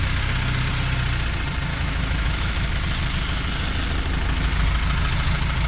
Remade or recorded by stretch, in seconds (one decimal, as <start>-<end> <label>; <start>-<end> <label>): 0.0-1.7 recorded; 1.7-2.7 remade; 2.7-5.7 recorded